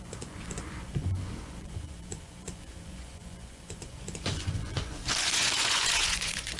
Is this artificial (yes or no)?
yes